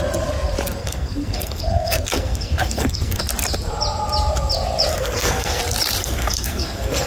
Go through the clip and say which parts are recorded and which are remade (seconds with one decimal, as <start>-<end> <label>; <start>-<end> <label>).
0.0-0.8 recorded; 0.8-3.2 remade; 3.2-4.9 recorded; 4.9-5.6 remade; 5.6-6.0 recorded; 6.0-7.1 remade